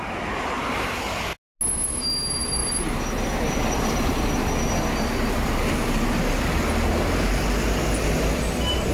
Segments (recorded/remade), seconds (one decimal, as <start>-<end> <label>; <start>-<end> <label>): 0.0-2.6 recorded; 2.6-4.1 remade; 4.1-8.9 recorded